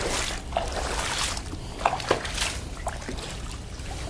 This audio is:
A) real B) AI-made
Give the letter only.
A